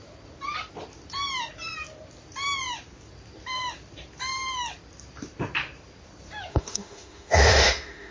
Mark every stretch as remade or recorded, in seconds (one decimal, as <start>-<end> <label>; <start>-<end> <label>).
0.0-6.5 recorded; 6.5-8.1 remade